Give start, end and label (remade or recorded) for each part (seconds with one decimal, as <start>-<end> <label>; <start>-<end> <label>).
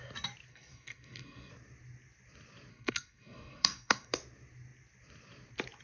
0.0-0.5 recorded; 0.5-1.5 remade; 1.5-2.7 recorded; 2.7-4.1 remade; 4.1-5.8 recorded